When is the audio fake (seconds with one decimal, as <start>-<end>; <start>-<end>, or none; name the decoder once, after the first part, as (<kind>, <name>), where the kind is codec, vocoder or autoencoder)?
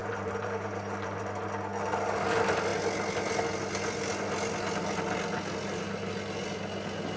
0.0-1.2 (vocoder, BigVGAN v2)